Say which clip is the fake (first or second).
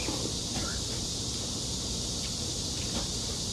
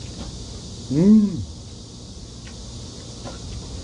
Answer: first